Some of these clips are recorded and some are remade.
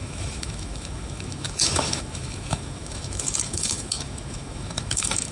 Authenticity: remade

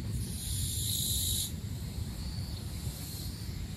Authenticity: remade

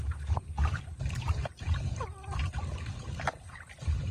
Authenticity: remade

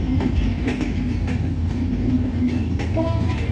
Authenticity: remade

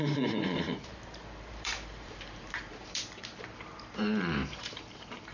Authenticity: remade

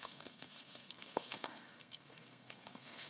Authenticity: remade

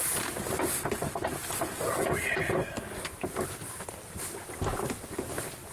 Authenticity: remade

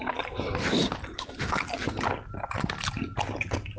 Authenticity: recorded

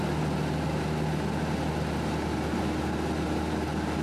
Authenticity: recorded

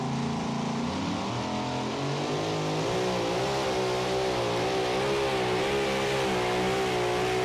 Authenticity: recorded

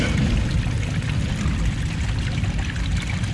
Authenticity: recorded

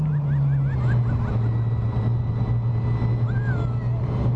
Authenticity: recorded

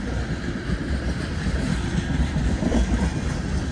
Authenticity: remade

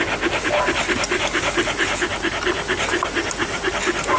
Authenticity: recorded